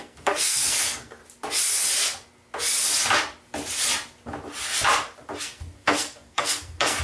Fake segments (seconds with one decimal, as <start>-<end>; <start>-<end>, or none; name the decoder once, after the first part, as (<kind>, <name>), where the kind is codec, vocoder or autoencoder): 0.0-1.2 (codec, SNAC); 5.4-7.0